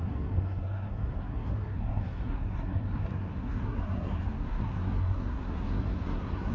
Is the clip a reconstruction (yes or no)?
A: yes